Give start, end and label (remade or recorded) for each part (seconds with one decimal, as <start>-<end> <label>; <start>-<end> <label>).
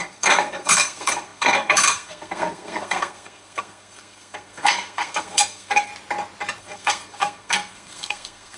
0.0-5.9 remade; 5.9-6.6 recorded; 6.6-8.6 remade